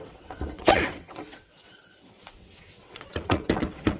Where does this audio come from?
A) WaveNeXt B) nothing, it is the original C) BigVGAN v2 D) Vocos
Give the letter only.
A